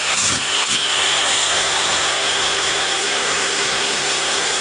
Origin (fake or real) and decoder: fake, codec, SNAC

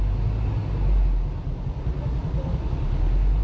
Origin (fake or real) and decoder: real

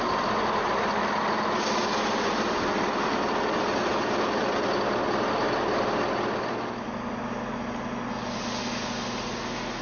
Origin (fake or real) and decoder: real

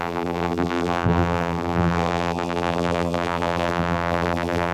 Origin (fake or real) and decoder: fake, vocoder, BigVGAN v2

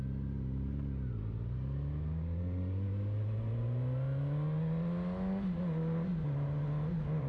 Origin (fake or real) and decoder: real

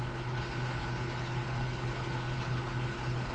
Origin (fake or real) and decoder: fake, codec, HILCodec